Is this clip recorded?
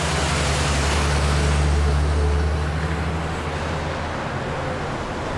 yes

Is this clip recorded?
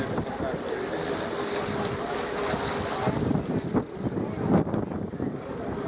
yes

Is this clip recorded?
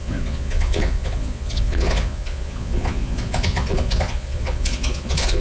no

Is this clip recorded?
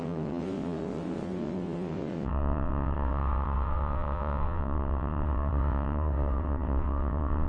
no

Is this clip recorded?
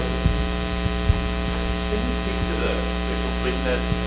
yes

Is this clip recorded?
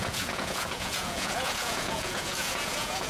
no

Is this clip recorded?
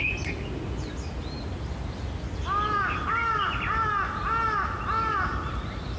yes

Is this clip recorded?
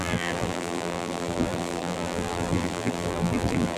no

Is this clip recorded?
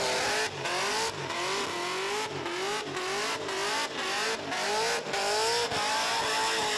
yes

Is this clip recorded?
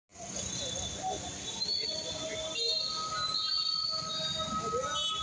yes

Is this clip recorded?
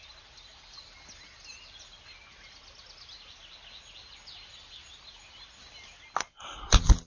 yes